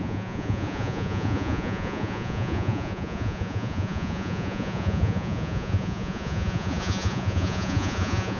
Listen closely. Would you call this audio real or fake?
fake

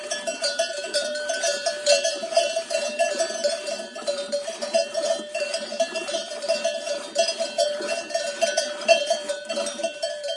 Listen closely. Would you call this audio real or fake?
fake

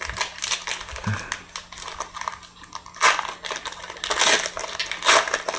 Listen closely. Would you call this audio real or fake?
real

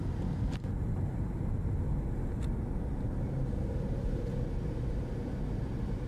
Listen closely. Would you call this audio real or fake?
real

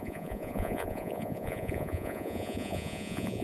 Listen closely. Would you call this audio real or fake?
fake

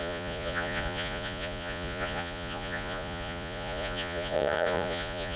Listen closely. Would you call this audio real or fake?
fake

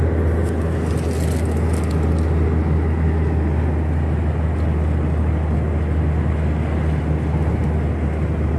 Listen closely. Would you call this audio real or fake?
real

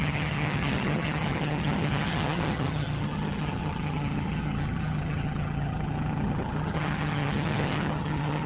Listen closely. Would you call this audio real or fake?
fake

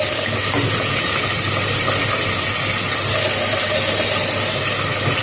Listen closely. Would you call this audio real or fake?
real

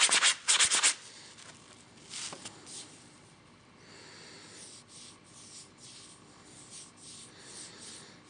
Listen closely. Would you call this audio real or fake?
real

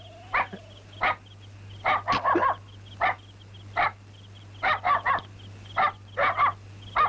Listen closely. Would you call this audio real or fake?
real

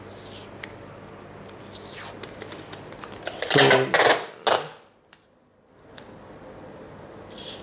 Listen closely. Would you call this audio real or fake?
real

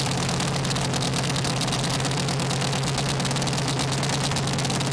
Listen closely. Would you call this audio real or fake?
real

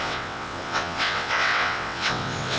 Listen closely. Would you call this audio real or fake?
fake